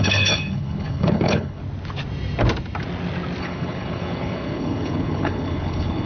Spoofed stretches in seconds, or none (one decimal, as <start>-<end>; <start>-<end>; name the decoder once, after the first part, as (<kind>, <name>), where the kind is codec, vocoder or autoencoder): 0.0-1.6 (codec, HILCodec); 3.4-6.1